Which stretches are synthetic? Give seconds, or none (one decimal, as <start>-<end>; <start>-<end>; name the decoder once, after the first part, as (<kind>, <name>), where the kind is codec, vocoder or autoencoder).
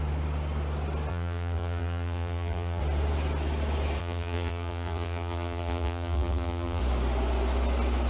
1.1-2.8 (vocoder, BigVGAN v2); 4.0-6.8